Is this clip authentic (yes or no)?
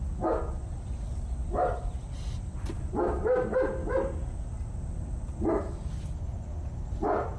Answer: yes